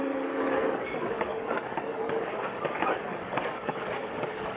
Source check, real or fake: fake